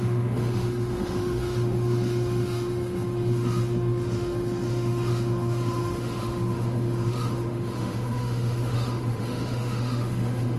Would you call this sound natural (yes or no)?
no